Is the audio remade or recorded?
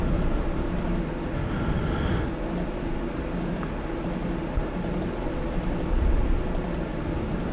recorded